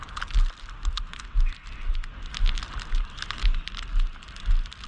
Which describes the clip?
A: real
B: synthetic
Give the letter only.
A